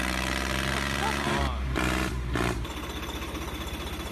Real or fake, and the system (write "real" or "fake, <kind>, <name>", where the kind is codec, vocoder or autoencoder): real